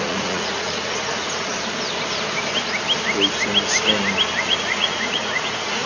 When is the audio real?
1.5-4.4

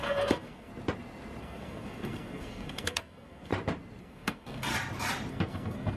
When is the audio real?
0.7-1.4; 3.5-4.0; 4.7-5.3

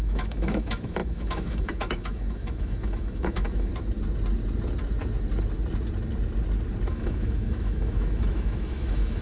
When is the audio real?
3.7-6.9

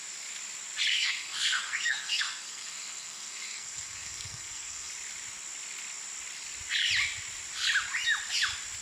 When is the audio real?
0.0-0.9; 4.9-8.8